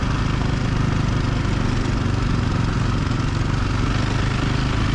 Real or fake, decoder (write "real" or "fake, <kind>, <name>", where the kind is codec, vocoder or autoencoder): real